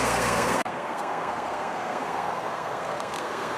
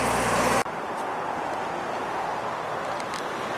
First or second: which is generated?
first